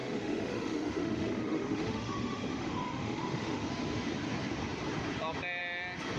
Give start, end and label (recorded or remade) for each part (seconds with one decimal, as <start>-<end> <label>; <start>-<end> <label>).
0.0-3.7 remade; 3.7-6.2 recorded